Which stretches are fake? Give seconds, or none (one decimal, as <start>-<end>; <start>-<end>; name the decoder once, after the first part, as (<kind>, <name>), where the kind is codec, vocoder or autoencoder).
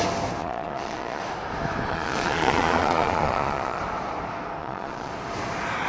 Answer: 0.4-1.2 (vocoder, Vocos); 1.9-3.8; 4.6-5.1